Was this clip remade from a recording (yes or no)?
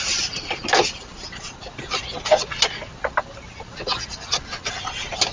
no